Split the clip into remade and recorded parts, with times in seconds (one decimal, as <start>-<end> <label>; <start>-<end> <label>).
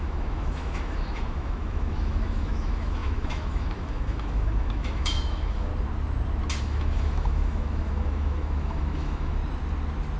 0.0-5.7 remade; 5.7-6.6 recorded; 6.6-9.4 remade; 9.4-10.2 recorded